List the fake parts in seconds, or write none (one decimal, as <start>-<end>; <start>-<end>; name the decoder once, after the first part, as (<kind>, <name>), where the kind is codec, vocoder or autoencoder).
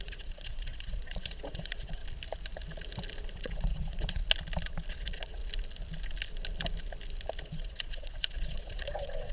0.0-2.0 (vocoder, Vocos); 3.3-4.2; 4.9-5.4; 7.4-9.3